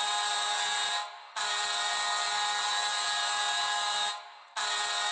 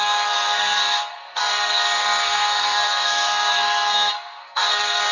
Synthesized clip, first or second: second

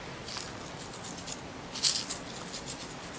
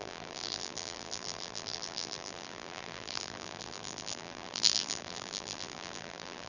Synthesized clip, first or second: second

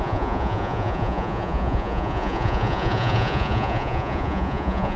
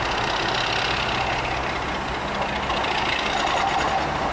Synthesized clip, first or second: first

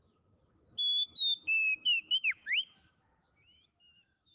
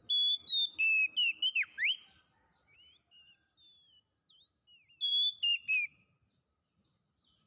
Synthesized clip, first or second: first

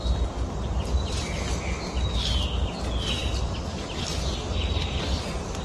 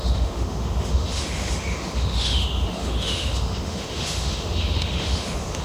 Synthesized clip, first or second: second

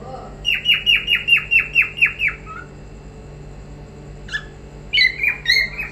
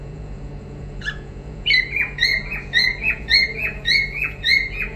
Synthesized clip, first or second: second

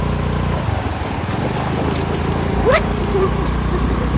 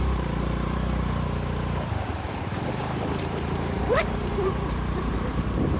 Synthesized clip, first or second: second